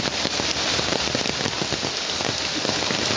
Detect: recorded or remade recorded